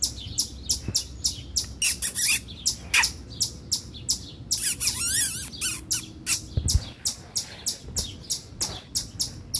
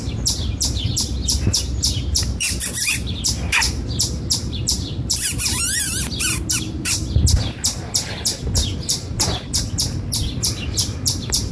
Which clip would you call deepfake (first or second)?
second